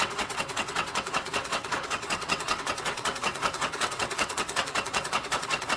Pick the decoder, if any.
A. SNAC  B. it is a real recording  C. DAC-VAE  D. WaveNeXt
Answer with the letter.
D